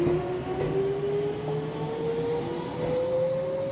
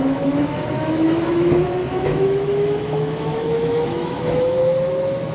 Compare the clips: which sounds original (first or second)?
first